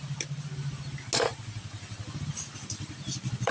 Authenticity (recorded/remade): recorded